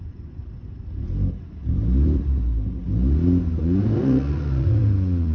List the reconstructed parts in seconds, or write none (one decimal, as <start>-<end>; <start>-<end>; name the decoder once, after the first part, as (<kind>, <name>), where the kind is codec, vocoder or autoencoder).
0.0-0.4 (vocoder, Vocos); 3.6-5.3

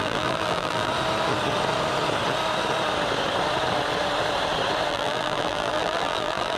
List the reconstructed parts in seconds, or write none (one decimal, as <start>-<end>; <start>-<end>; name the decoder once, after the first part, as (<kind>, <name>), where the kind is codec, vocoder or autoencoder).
0.0-0.9 (vocoder, BigVGAN v2); 4.9-6.6

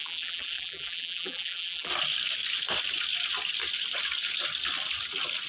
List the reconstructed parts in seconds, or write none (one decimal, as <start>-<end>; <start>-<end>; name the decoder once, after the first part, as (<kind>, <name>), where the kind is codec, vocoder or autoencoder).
0.0-1.9 (vocoder, BigVGAN v2)

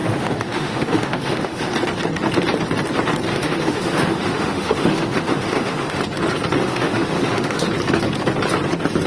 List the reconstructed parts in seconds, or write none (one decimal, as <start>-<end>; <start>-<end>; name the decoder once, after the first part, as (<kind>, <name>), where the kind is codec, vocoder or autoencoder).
0.0-1.7 (autoencoder, DAC-VAE); 3.3-6.0; 6.6-7.7

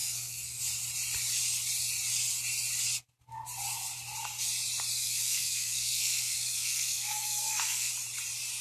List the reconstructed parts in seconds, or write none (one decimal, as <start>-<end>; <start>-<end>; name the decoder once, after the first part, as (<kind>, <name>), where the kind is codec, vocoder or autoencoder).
0.0-0.6 (codec, SNAC); 4.9-7.9